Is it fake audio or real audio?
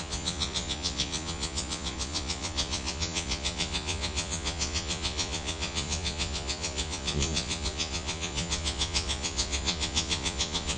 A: fake